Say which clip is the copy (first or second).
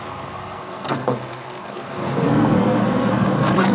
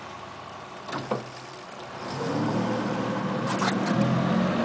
first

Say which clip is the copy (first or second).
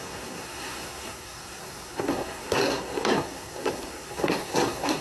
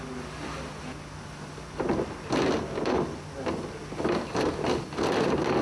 first